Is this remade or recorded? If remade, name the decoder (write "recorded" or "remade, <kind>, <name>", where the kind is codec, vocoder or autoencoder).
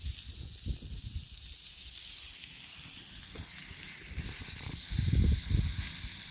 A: recorded